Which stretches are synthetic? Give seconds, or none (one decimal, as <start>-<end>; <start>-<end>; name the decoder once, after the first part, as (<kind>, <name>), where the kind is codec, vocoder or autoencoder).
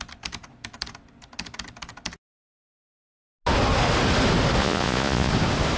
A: 4.6-5.3 (vocoder, Vocos)